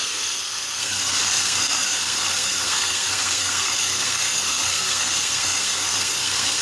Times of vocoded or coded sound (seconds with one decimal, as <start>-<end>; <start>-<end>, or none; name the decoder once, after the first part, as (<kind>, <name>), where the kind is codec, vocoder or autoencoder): 0.0-6.6 (codec, SNAC)